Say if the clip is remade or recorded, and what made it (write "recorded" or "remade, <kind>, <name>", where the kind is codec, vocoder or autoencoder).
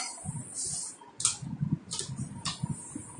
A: recorded